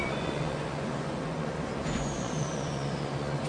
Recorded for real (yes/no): no